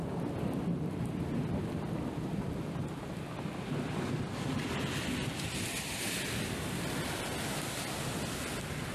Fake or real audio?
real